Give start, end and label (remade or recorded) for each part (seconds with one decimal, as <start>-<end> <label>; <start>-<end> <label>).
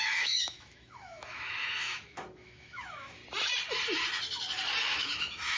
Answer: 0.0-3.2 remade; 3.2-4.8 recorded; 4.8-5.6 remade